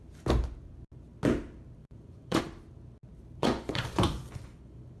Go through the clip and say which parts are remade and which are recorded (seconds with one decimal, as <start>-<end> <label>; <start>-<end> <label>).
0.0-1.8 recorded; 1.8-2.4 remade; 2.4-3.4 recorded; 3.4-5.0 remade